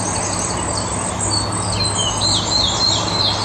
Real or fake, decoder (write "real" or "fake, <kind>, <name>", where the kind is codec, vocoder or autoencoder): real